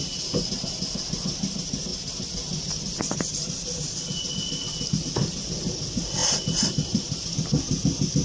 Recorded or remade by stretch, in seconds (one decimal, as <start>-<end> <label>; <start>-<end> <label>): 0.0-8.2 recorded